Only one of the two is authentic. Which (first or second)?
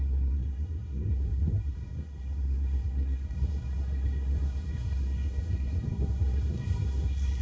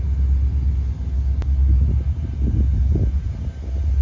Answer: second